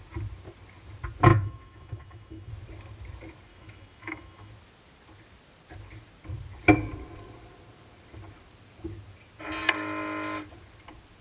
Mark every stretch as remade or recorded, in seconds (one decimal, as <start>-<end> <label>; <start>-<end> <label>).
0.0-1.3 recorded; 1.3-2.5 remade; 2.5-3.5 recorded; 3.5-4.5 remade; 4.5-11.2 recorded